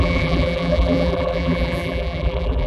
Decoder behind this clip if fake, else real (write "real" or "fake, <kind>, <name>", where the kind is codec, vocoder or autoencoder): fake, vocoder, BigVGAN v2